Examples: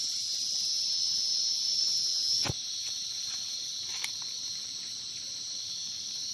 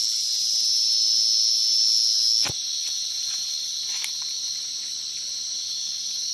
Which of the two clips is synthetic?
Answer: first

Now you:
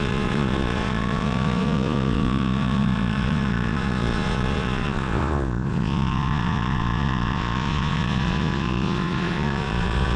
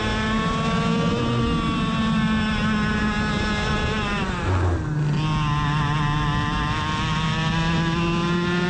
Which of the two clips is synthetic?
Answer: first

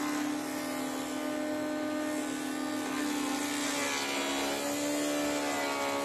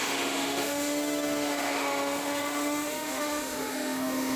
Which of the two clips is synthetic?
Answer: second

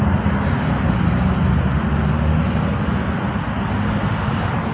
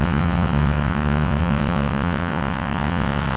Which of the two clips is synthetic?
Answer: second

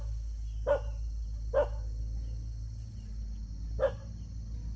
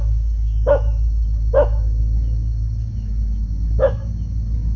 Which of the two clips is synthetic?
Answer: second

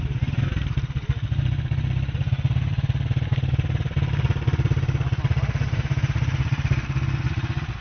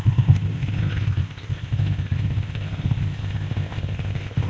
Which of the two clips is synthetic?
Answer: second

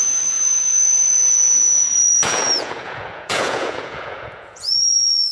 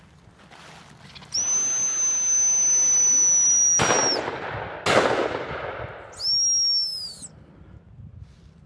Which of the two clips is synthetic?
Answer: first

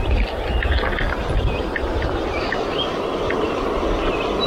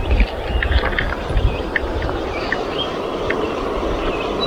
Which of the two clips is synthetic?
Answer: second